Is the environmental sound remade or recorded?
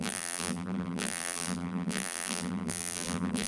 remade